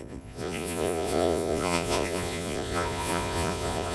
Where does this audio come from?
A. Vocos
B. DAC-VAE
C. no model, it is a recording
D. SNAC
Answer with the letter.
A